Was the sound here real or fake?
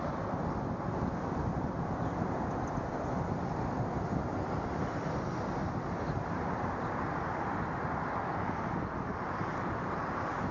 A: real